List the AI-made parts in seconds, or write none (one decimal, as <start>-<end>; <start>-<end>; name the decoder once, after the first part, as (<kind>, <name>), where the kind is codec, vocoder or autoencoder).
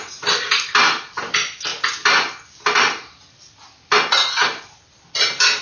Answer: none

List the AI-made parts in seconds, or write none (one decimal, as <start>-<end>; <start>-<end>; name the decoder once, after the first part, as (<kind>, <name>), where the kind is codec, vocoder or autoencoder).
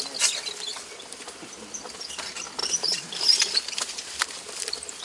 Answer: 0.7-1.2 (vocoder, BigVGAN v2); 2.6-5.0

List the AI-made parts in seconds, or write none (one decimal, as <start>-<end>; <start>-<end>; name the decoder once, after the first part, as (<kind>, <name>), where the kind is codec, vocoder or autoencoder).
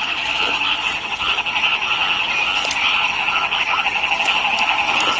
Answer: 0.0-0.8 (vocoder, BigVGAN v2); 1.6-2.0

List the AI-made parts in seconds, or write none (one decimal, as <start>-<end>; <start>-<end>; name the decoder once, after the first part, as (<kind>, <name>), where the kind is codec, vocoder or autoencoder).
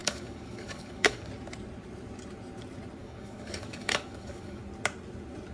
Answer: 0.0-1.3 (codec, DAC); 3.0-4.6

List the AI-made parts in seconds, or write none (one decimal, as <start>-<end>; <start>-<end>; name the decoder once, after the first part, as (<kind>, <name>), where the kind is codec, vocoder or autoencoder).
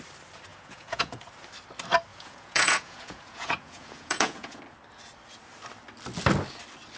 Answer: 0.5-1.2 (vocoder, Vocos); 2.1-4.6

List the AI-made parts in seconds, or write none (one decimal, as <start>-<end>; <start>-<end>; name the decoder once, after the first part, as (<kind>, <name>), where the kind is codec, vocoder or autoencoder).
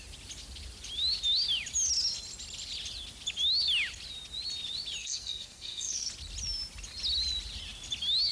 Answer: 5.0-6.1 (codec, SNAC)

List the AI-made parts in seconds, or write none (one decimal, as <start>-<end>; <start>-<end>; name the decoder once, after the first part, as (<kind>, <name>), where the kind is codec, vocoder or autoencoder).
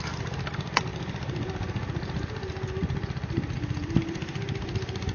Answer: none